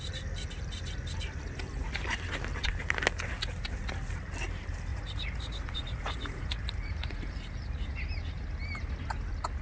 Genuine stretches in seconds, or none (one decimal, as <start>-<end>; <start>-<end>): 0.0-4.9; 7.3-9.6